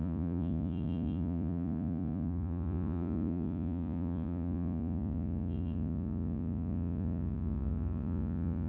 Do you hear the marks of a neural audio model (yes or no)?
yes